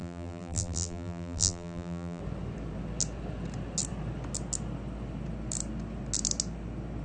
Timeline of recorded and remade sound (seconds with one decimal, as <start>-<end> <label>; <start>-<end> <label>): 0.0-2.2 remade; 2.2-7.0 recorded